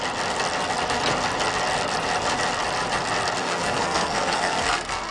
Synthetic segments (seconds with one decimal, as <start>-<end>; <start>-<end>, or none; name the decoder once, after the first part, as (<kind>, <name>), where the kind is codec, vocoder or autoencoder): 3.4-5.1 (codec, SNAC)